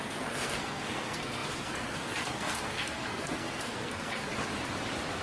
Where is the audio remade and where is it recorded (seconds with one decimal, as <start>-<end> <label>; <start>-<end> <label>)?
0.0-4.3 remade; 4.3-5.2 recorded